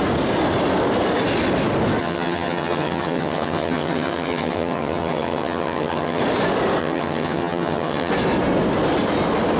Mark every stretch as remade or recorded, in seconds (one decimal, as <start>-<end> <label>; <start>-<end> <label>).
0.0-2.0 recorded; 2.0-6.2 remade; 6.2-6.8 recorded; 6.8-8.1 remade; 8.1-9.6 recorded